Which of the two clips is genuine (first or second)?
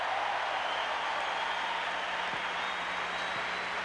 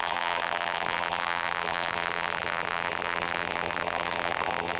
first